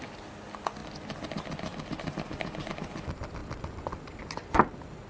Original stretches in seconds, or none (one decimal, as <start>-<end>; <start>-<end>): 0.0-5.1